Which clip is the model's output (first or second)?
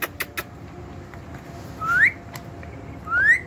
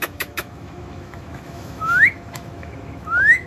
second